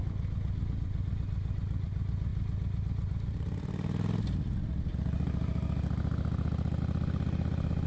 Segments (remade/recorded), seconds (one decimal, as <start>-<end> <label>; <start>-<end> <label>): 0.0-7.9 recorded